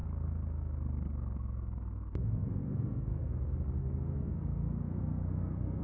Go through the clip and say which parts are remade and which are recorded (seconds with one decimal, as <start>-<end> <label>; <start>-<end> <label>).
0.0-3.4 remade; 3.4-3.8 recorded; 3.8-5.8 remade